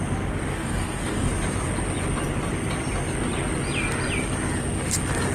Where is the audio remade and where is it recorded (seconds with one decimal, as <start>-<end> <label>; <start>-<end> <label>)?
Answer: 0.0-0.5 recorded; 0.5-1.3 remade; 1.3-5.3 recorded